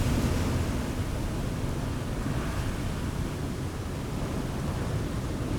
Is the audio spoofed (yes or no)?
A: no